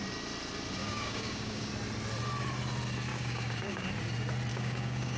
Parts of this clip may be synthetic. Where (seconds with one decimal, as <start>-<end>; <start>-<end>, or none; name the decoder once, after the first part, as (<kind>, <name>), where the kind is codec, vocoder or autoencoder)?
0.8-1.7 (codec, DAC); 3.1-3.9; 4.5-5.2